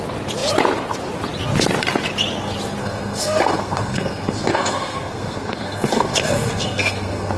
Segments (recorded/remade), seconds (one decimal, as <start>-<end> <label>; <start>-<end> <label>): 0.0-2.8 recorded; 2.8-7.4 remade